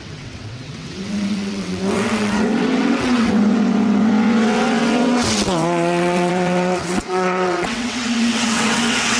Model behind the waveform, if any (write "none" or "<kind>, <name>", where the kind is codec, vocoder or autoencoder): vocoder, WaveNeXt